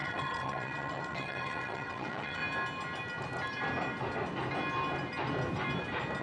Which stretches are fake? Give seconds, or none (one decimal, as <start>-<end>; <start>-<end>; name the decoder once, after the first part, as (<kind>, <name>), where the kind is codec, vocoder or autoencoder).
0.0-2.4 (vocoder, WaveNeXt)